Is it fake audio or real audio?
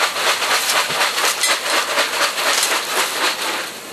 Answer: real